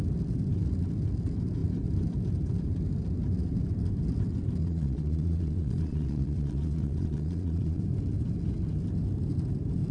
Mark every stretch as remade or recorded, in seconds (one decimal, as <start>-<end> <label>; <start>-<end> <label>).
0.0-4.6 recorded; 4.6-7.8 remade; 7.8-9.9 recorded